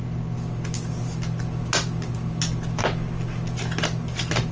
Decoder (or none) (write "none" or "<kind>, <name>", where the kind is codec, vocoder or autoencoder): none